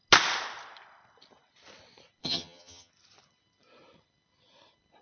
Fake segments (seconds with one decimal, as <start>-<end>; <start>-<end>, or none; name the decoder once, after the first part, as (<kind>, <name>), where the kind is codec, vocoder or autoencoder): 2.2-2.9 (vocoder, HiFi-GAN)